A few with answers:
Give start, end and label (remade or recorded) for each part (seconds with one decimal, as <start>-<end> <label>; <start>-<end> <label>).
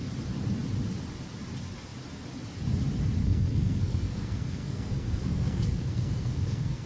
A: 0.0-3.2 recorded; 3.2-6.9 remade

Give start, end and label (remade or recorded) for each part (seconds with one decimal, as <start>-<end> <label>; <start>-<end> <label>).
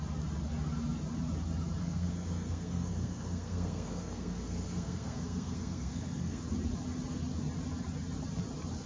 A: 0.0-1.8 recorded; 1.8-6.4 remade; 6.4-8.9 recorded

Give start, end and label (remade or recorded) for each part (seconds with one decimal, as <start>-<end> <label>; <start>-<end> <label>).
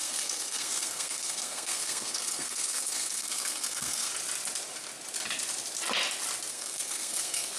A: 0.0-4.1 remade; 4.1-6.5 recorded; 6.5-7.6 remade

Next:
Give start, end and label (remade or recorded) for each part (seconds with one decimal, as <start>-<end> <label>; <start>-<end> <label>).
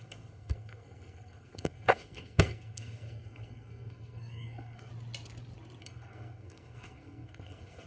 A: 0.0-4.9 remade; 4.9-5.8 recorded; 5.8-7.9 remade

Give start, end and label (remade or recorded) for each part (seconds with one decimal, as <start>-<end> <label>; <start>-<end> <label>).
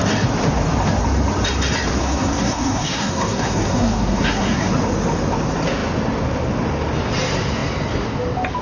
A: 0.0-2.0 recorded; 2.0-4.7 remade; 4.7-8.6 recorded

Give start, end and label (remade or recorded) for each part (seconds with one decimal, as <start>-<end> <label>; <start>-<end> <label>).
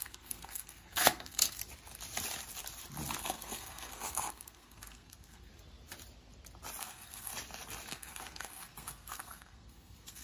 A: 0.0-1.6 remade; 1.6-3.2 recorded; 3.2-5.5 remade; 5.5-6.8 recorded; 6.8-7.3 remade; 7.3-7.9 recorded; 7.9-10.2 remade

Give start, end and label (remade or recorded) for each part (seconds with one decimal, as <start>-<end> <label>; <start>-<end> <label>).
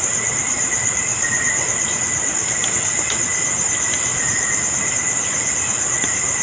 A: 0.0-6.4 recorded